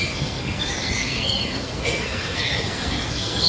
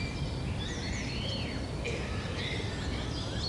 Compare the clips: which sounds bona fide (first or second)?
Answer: second